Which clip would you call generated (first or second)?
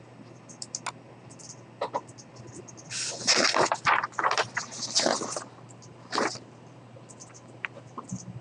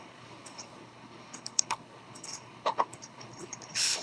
second